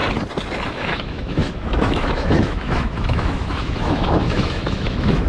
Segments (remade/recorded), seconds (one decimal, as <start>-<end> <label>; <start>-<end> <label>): 0.0-0.7 recorded; 0.7-5.3 remade